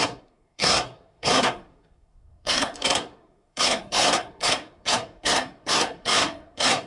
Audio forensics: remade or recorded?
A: remade